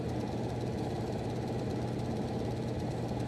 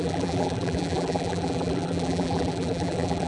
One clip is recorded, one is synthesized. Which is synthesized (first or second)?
second